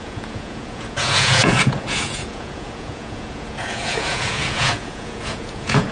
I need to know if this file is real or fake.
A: fake